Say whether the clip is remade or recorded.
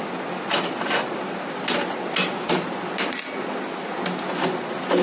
recorded